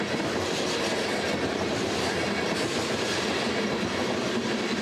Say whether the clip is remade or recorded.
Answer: recorded